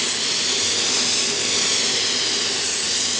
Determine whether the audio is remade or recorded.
recorded